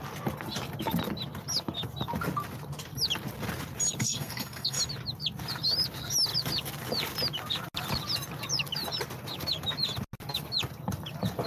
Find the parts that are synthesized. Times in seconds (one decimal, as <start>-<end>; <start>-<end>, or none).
4.0-4.8